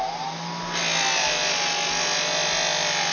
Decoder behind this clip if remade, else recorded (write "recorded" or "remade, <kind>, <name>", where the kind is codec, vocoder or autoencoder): recorded